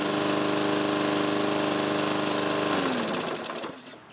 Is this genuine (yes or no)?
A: yes